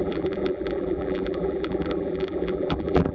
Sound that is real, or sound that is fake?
fake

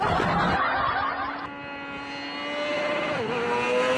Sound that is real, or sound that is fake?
real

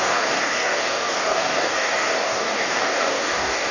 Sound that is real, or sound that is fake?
fake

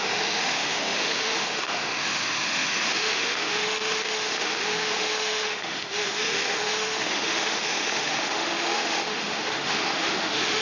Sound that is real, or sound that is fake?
fake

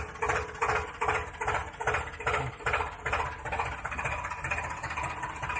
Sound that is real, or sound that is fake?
real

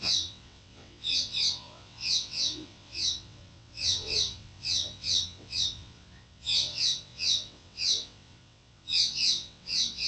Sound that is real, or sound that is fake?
fake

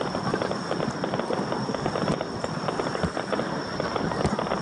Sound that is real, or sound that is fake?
real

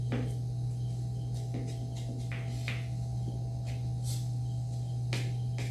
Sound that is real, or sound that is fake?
real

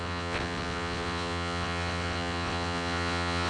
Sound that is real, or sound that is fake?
fake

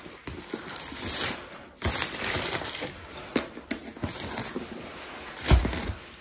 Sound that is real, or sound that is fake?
real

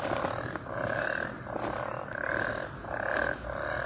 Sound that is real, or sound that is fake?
real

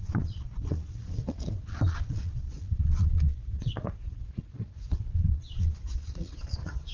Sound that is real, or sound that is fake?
fake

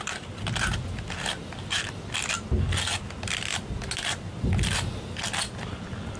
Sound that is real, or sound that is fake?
real